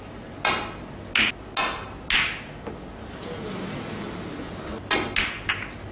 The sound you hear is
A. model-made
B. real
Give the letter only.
B